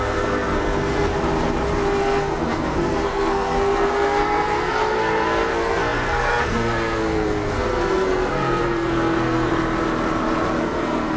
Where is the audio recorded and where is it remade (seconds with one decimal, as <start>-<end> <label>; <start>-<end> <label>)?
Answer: 0.0-1.1 remade; 1.1-2.0 recorded; 2.0-9.5 remade; 9.5-10.6 recorded; 10.6-11.2 remade